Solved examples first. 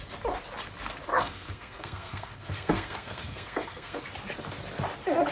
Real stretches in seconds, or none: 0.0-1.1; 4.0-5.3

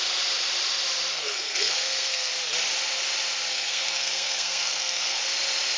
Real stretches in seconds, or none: 0.0-1.1; 2.3-3.5; 5.2-5.8